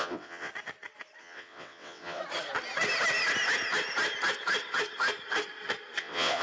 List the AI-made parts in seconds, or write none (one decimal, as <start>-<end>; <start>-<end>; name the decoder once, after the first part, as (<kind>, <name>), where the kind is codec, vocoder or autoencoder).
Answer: 0.0-0.5 (vocoder, WaveNeXt); 1.2-2.2; 6.0-6.4